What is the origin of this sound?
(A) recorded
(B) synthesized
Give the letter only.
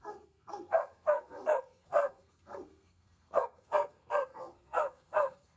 B